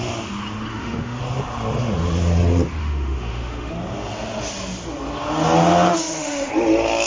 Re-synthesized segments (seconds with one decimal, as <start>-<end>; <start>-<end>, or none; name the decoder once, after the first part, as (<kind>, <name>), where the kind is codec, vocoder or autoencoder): 0.7-1.2 (autoencoder, DAC-VAE); 2.8-3.7; 5.9-6.5